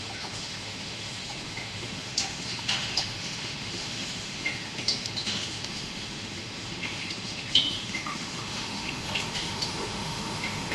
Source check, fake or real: fake